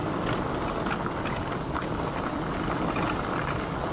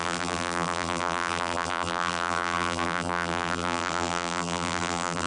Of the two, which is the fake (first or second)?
second